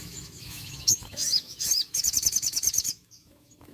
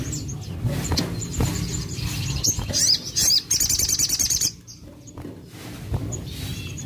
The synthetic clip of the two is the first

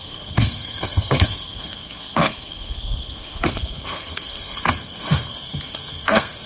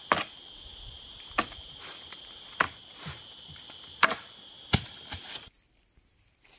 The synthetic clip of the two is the first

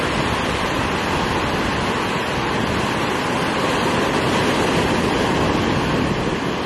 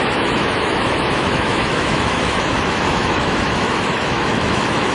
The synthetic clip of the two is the second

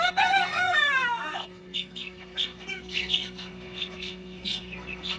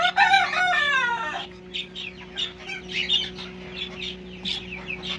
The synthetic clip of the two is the first